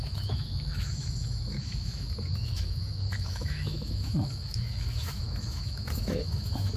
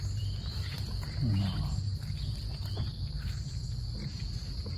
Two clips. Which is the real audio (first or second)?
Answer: second